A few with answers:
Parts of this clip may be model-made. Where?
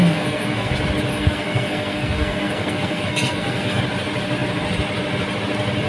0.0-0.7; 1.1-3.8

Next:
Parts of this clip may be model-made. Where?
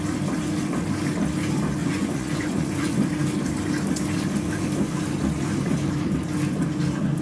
1.8-3.0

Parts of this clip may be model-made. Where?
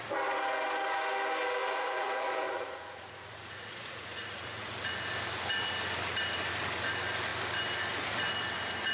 1.6-4.9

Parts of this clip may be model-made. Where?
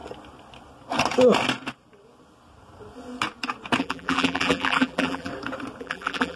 3.8-5.3; 5.8-6.4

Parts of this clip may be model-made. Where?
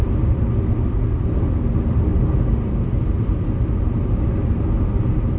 none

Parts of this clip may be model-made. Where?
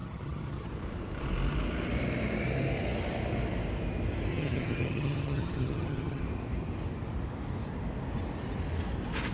0.0-0.7; 4.3-6.2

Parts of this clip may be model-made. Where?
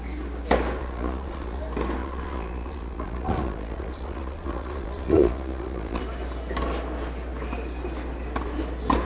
0.8-1.6; 2.0-6.0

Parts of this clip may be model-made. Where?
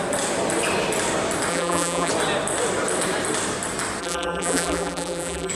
1.5-2.1; 4.0-5.5